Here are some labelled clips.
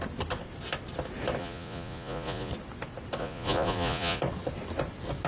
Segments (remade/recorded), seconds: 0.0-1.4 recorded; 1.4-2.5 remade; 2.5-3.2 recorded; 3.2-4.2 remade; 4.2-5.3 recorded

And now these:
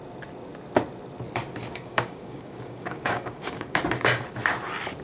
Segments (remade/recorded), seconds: 0.0-1.7 recorded; 1.7-3.8 remade; 3.8-5.0 recorded

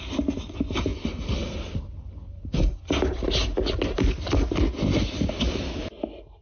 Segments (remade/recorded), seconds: 0.0-6.4 recorded

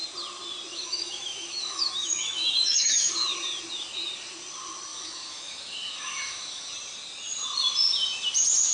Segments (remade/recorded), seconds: 0.0-0.7 recorded; 0.7-3.1 remade; 3.1-4.9 recorded; 4.9-6.7 remade; 6.7-8.7 recorded

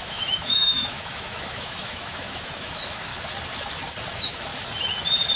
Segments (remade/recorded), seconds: 0.0-3.1 remade; 3.1-4.1 recorded; 4.1-4.5 remade; 4.5-5.4 recorded

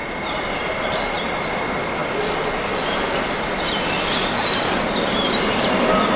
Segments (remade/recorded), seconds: 0.0-6.2 recorded